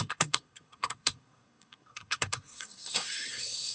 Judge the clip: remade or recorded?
remade